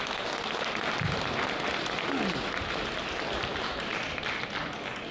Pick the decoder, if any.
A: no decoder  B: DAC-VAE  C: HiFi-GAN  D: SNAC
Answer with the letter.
A